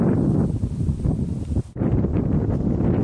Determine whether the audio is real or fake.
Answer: real